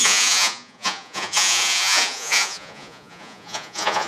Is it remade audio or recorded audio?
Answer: remade